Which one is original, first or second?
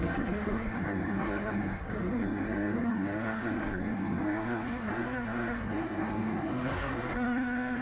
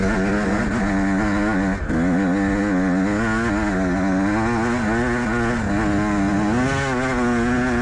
second